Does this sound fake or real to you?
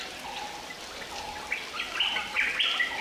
real